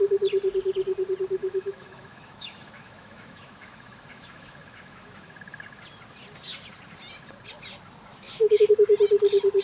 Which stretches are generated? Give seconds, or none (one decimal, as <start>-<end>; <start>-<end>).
1.4-5.4; 8.1-8.7